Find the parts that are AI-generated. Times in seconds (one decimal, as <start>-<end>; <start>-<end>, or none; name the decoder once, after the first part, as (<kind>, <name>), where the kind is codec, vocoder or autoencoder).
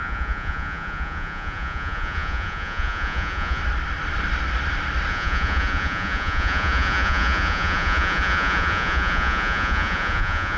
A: 0.0-3.6 (vocoder, Vocos); 5.1-10.6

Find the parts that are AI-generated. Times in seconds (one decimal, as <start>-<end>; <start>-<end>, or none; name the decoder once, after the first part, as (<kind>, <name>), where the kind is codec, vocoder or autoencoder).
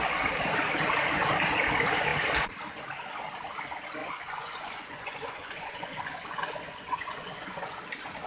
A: 4.0-7.8 (vocoder, Vocos)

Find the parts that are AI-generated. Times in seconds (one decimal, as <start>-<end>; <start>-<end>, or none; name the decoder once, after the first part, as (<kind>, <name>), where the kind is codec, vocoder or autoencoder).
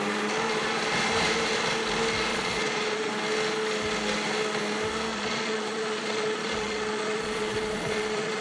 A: 2.3-3.1 (vocoder, Vocos); 5.1-8.4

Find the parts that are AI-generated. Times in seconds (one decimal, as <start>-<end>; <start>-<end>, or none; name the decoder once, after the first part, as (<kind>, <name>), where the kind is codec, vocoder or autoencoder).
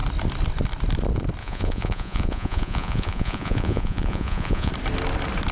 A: 1.4-4.7 (vocoder, Vocos)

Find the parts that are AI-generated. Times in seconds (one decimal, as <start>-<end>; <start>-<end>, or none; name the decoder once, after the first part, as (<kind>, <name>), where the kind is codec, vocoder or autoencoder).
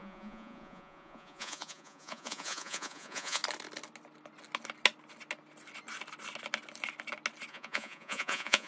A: 0.0-3.4 (vocoder, Vocos); 7.5-8.7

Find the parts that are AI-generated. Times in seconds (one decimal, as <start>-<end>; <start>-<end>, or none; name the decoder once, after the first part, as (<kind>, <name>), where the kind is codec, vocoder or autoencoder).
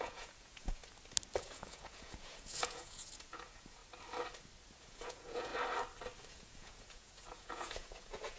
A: 0.0-0.8 (vocoder, Vocos); 1.4-3.8; 4.8-5.5; 6.3-8.4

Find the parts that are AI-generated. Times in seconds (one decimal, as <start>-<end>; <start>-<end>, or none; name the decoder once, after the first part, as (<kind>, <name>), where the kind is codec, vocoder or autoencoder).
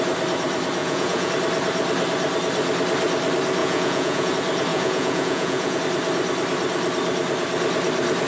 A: 0.8-1.3 (vocoder, Vocos); 3.6-4.3; 4.7-5.8